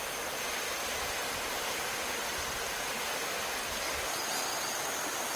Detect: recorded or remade recorded